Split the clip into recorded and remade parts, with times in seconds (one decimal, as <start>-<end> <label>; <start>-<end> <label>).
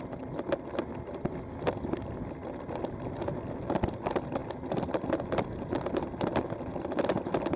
0.0-7.6 recorded